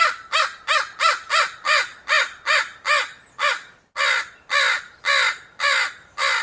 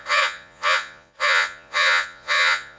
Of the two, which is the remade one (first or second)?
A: second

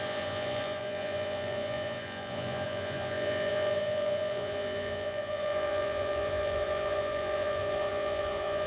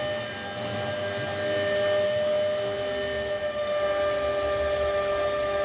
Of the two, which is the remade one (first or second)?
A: first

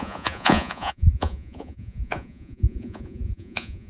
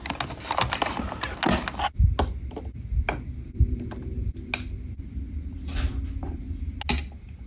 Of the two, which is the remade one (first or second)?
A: first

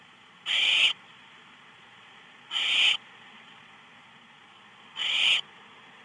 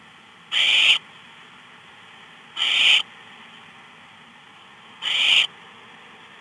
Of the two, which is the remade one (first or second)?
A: first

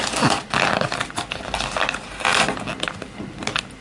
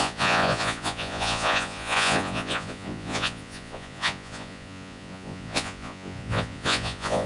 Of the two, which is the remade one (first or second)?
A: second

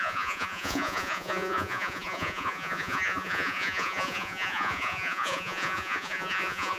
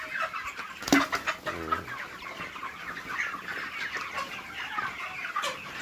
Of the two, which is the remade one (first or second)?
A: first